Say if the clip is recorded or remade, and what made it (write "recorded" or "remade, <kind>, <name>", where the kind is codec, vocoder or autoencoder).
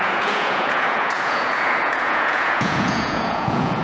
remade, vocoder, Vocos